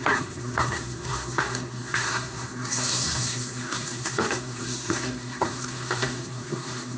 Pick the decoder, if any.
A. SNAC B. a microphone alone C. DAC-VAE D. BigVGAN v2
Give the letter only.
A